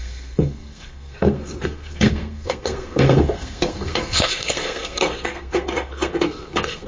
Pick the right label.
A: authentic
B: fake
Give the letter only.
B